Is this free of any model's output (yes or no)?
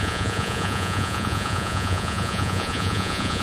no